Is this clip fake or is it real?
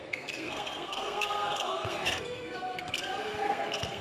fake